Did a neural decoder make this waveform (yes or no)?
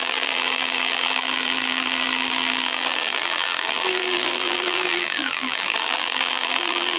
yes